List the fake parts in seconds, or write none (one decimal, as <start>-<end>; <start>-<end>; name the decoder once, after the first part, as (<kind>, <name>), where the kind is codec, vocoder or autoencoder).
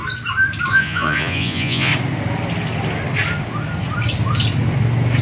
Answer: 0.7-1.9 (vocoder, Vocos)